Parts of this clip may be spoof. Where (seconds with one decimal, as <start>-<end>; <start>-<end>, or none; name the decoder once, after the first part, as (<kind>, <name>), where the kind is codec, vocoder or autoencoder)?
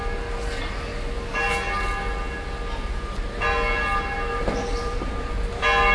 4.3-5.3 (vocoder, BigVGAN v2)